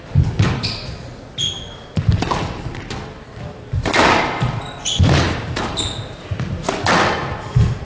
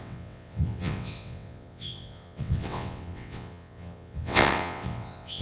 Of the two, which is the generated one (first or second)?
second